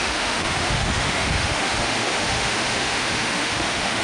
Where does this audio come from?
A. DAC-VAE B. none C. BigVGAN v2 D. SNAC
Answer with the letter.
A